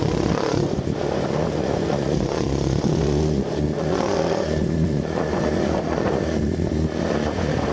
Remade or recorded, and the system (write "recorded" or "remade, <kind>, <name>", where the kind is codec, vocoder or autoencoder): remade, vocoder, Vocos